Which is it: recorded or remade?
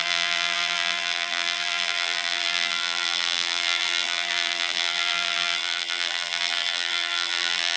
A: remade